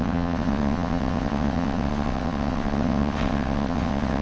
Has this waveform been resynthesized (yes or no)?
yes